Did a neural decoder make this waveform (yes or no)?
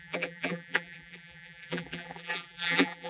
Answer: yes